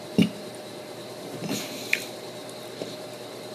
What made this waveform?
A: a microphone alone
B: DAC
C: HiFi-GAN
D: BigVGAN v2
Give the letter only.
D